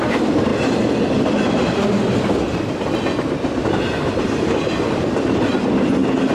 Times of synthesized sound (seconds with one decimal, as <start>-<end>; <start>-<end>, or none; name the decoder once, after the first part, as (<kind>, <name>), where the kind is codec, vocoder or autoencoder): 0.0-0.5 (vocoder, BigVGAN v2); 3.6-6.3